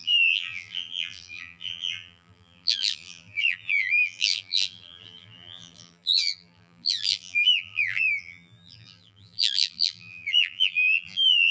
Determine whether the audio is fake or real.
fake